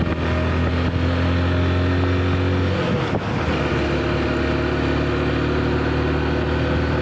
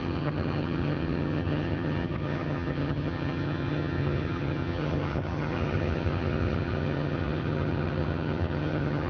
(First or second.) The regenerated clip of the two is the second